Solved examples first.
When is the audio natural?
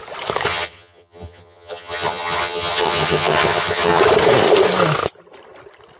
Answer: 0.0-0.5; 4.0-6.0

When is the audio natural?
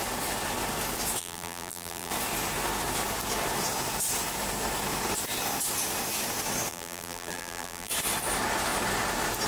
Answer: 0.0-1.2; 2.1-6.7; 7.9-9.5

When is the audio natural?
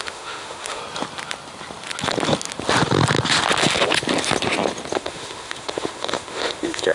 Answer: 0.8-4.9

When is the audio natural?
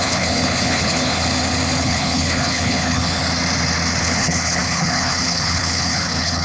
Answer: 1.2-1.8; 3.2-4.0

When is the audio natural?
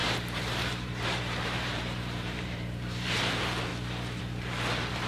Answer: 3.1-5.1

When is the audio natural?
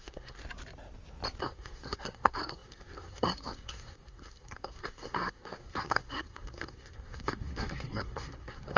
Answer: 0.4-1.4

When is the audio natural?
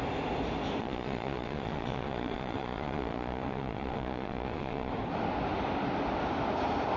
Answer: 0.0-0.8; 4.9-7.0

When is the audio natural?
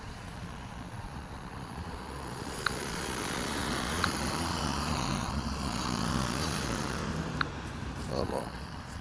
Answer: 7.0-8.1